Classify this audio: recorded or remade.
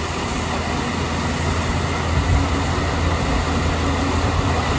recorded